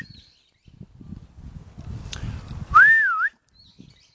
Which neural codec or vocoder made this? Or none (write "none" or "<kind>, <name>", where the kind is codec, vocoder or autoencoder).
none